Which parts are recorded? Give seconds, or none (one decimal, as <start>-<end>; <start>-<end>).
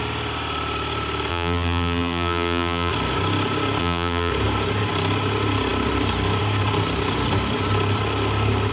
0.0-1.3; 2.9-3.8; 4.3-8.7